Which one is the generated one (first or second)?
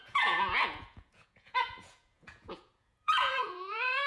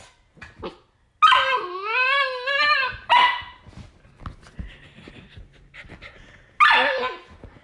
first